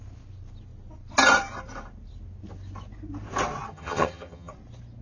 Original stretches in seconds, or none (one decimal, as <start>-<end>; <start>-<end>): 0.0-3.7; 4.5-5.0